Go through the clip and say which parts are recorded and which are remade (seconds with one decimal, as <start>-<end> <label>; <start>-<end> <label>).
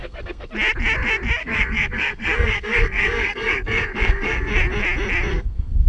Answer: 0.0-0.5 remade; 0.5-1.4 recorded; 1.4-4.5 remade; 4.5-5.3 recorded; 5.3-5.9 remade